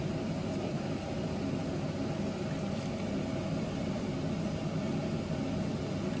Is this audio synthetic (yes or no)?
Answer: no